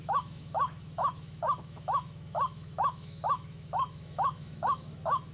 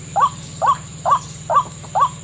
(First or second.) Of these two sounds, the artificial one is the first